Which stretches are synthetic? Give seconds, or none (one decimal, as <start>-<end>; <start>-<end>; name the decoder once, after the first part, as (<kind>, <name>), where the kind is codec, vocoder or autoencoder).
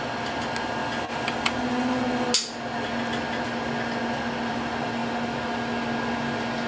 none